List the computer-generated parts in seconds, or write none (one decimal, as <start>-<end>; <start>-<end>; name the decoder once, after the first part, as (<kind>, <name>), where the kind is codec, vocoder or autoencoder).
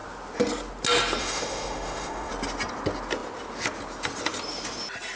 1.2-2.3 (autoencoder, DAC-VAE)